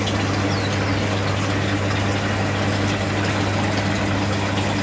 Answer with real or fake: real